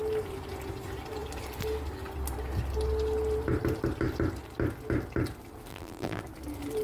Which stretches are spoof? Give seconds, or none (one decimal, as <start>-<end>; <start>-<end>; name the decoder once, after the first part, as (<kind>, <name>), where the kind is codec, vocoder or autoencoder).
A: 5.7-6.2 (vocoder, BigVGAN v2)